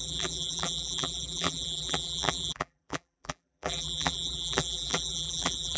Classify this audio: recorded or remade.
remade